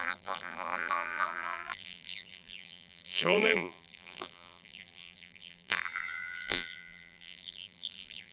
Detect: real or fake fake